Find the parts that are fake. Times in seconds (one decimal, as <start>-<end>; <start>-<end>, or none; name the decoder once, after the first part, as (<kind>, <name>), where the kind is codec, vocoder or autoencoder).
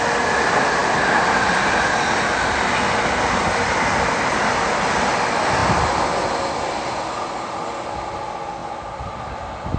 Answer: none